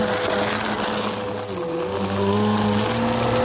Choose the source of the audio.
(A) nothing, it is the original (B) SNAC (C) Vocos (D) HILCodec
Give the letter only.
A